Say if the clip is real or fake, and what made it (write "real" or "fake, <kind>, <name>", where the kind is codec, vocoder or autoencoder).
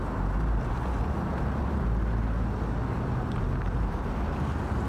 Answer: real